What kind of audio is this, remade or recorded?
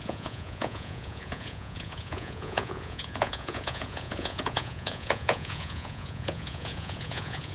remade